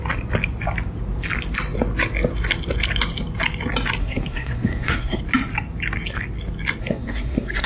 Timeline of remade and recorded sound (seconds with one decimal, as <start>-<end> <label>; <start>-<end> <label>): 0.0-4.0 recorded; 4.0-5.2 remade; 5.2-6.8 recorded; 6.8-7.7 remade